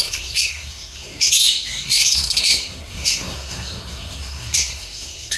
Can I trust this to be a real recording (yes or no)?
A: no